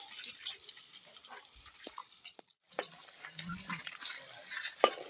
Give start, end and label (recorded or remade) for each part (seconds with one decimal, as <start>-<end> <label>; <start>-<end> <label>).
0.0-0.4 recorded; 0.4-1.0 remade; 1.0-2.0 recorded; 2.0-2.9 remade; 2.9-3.5 recorded; 3.5-4.0 remade; 4.0-5.1 recorded